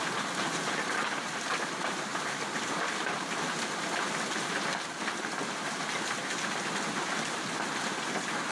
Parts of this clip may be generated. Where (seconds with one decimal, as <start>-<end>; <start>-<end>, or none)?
2.1-3.4